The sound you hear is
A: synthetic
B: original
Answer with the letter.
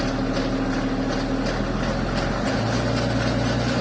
B